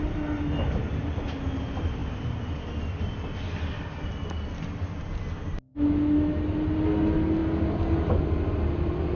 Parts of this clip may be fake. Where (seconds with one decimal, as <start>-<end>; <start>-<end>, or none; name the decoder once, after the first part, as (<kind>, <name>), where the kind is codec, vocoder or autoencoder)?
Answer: 5.7-6.4 (autoencoder, DAC-VAE)